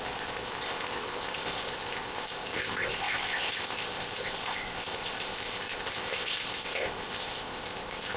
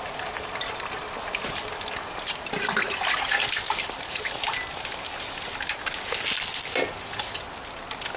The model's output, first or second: first